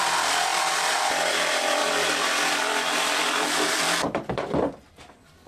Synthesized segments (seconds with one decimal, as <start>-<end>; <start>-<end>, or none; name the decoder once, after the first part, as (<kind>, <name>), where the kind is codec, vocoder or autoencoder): 0.0-5.5 (vocoder, BigVGAN v2)